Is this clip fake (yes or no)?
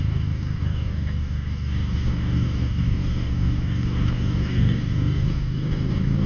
yes